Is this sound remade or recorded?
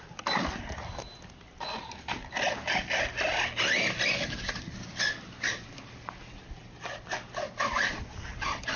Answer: recorded